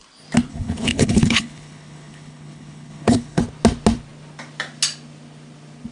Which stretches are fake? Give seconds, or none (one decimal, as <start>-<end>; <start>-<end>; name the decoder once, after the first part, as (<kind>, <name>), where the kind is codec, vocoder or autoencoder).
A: 0.5-3.4 (codec, HILCodec)